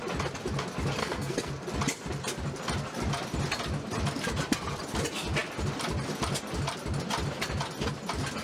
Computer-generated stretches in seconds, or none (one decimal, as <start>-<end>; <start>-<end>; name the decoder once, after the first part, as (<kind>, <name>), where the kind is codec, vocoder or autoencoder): 1.0-1.5 (codec, SNAC)